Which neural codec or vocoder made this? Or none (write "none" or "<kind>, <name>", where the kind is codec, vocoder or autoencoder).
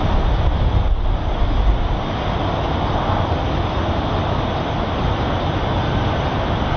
none